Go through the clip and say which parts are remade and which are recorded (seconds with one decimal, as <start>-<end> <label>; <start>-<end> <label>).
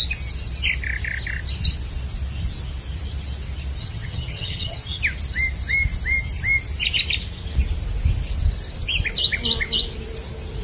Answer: 0.0-3.8 recorded; 3.8-5.0 remade; 5.0-10.6 recorded